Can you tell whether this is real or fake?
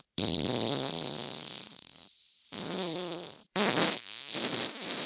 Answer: fake